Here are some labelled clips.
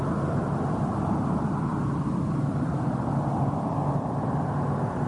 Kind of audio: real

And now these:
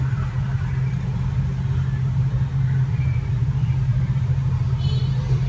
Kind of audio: real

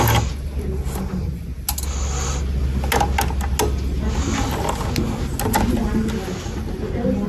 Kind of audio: real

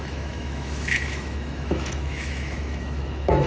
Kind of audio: fake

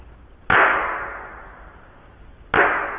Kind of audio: real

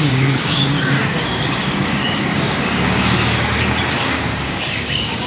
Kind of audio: fake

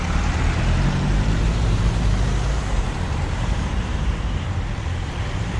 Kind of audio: fake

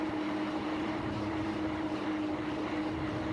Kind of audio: fake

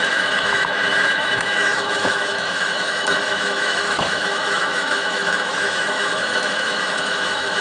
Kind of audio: fake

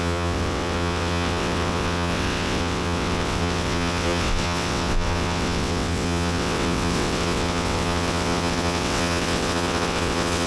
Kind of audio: fake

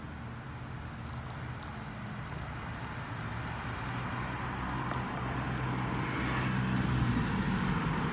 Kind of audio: real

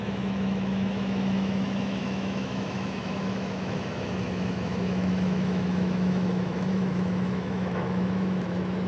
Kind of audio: fake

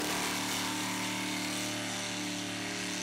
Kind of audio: real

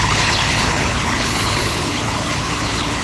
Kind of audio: fake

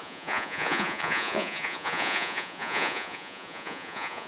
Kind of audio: fake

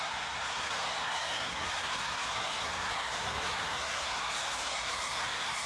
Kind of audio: fake